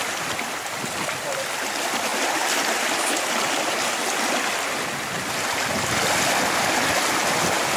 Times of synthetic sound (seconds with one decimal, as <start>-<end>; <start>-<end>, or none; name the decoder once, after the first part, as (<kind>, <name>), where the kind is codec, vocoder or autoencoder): none